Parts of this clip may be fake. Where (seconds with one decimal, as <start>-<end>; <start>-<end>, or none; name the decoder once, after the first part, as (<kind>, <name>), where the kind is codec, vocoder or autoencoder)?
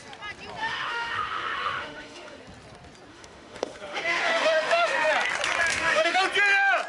0.6-2.4 (autoencoder, DAC-VAE); 3.1-5.1; 5.7-6.2